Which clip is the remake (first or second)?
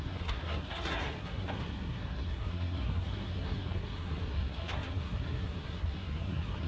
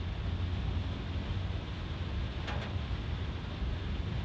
first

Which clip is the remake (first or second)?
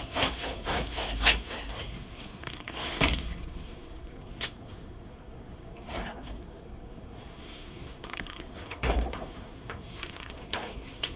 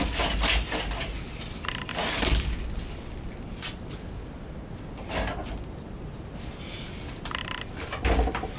first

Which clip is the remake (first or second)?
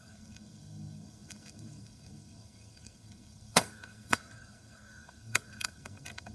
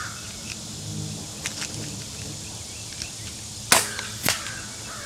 first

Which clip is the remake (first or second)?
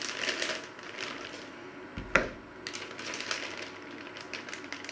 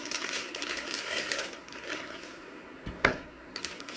second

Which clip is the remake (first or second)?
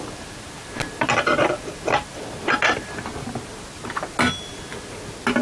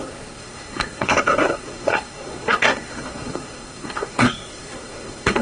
second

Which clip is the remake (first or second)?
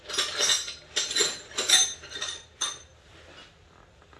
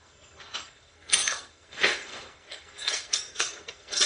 second